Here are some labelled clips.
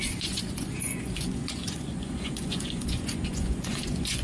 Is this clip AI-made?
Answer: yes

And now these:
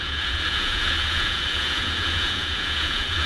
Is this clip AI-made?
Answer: yes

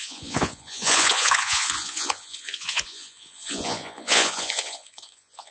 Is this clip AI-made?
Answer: yes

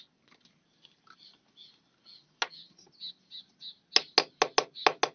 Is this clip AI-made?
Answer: no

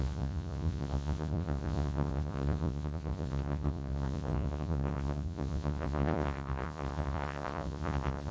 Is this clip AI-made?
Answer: yes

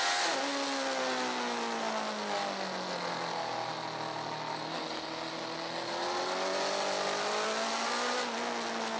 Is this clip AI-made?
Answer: no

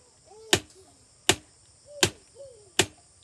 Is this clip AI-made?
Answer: no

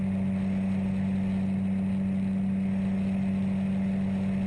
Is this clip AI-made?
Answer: no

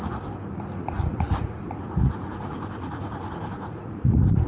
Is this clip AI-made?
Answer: yes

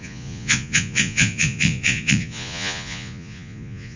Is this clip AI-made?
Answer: yes